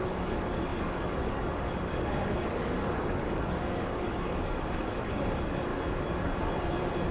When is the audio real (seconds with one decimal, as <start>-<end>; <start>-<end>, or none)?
5.7-7.1